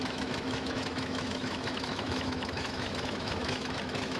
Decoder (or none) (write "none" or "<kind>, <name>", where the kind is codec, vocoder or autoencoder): autoencoder, DAC-VAE